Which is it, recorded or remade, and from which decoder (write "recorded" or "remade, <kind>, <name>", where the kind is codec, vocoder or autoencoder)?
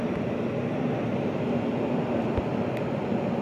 recorded